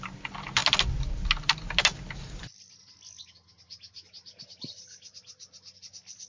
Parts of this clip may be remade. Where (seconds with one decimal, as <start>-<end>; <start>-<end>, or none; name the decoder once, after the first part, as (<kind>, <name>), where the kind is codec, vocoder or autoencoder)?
none